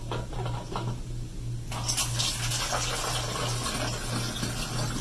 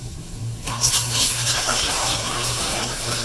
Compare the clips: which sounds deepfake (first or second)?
second